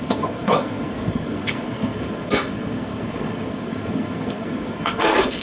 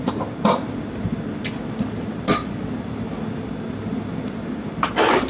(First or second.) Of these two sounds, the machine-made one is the first